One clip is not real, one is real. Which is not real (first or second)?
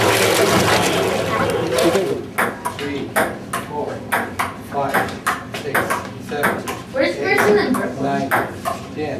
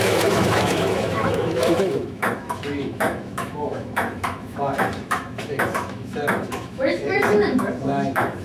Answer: second